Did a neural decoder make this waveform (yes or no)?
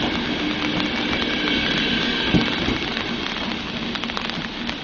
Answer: no